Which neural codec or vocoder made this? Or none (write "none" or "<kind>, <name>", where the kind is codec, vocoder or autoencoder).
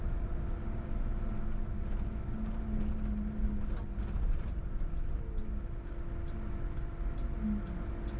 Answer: none